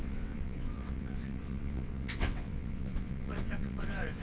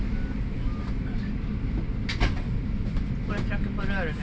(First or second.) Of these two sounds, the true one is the second